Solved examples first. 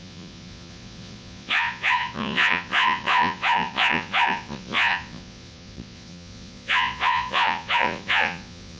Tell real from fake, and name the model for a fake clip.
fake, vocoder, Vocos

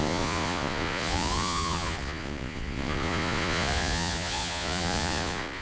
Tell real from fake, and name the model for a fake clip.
fake, vocoder, Vocos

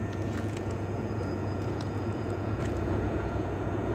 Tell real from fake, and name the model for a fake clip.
fake, vocoder, Vocos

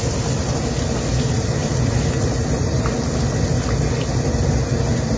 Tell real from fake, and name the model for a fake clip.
real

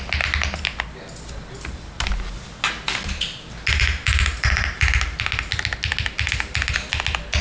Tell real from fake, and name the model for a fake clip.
real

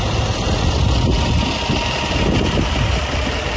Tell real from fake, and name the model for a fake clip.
real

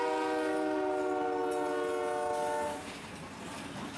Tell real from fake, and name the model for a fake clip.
real